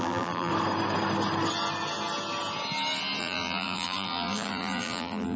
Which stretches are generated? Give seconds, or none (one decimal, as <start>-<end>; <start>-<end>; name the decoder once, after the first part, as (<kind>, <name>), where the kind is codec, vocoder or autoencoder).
0.0-0.5 (vocoder, BigVGAN v2); 3.2-5.4